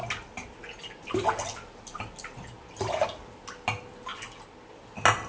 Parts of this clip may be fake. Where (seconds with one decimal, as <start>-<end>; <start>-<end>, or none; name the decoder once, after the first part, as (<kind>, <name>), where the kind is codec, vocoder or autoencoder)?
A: none